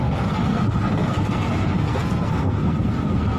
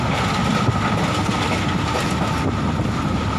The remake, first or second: first